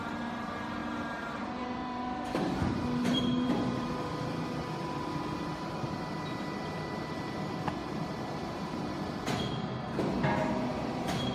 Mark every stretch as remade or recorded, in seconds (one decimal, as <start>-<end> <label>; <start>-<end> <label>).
0.0-0.8 recorded; 0.8-5.7 remade; 5.7-7.8 recorded; 7.8-8.9 remade; 8.9-11.3 recorded